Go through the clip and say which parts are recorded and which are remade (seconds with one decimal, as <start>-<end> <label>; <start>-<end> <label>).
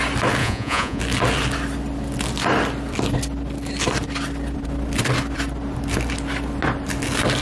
0.0-0.4 recorded; 0.4-1.0 remade; 1.0-7.4 recorded